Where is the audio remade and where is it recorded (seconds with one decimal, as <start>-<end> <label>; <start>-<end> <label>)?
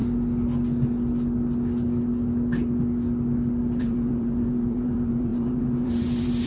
0.0-3.8 recorded; 3.8-6.5 remade